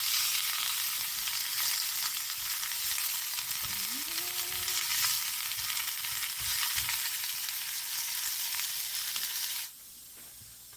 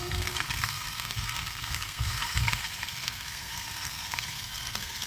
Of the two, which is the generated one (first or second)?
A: second